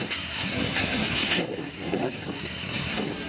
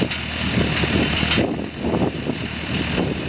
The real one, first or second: second